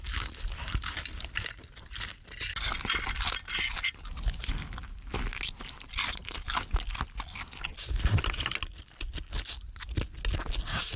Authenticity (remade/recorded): recorded